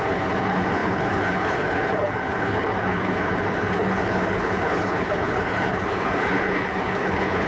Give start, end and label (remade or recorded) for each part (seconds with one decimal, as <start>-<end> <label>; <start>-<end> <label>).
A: 0.0-7.5 remade